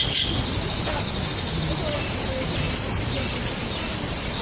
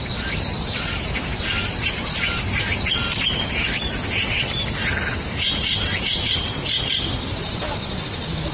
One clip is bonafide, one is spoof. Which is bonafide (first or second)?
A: first